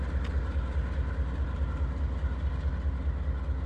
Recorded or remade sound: recorded